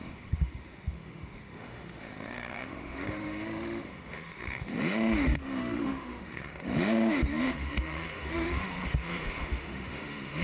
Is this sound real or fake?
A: fake